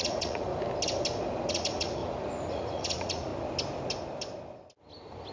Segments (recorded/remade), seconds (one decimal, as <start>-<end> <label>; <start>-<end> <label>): 0.0-0.5 remade; 0.5-1.5 recorded; 1.5-2.0 remade; 2.0-2.5 recorded; 2.5-3.3 remade; 3.3-5.3 recorded